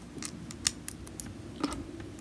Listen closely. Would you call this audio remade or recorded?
recorded